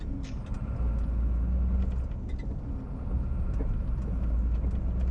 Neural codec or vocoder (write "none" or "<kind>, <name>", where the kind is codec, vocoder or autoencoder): none